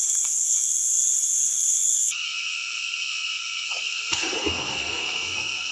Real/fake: fake